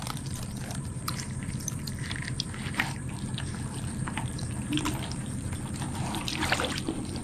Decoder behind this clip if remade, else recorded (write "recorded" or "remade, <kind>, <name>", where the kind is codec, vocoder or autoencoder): remade, vocoder, BigVGAN v2